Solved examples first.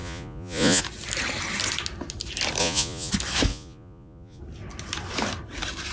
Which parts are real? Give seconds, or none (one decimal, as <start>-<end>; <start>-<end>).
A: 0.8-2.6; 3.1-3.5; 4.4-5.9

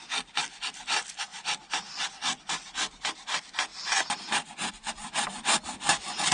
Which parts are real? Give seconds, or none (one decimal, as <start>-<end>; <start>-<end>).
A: 0.0-6.3

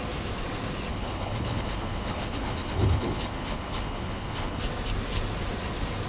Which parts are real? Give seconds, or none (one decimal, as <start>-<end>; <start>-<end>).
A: 0.0-0.9; 4.6-6.1